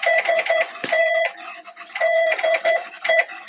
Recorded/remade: remade